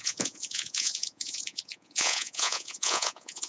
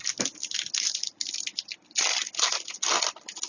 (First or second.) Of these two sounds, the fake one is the first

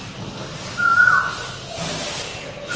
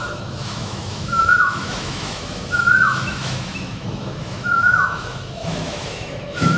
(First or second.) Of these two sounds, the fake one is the second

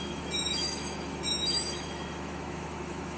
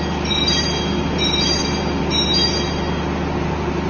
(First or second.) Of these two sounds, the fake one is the first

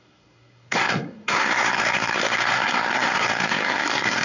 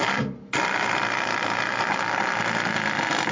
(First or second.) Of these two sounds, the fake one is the first